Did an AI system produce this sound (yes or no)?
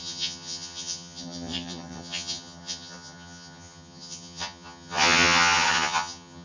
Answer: yes